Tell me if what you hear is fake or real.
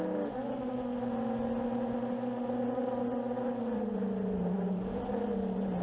real